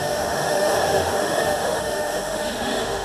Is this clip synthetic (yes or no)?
yes